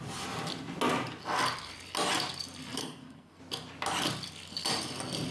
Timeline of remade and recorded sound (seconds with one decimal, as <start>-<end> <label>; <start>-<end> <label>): 0.0-2.8 recorded; 2.8-3.4 remade; 3.4-5.3 recorded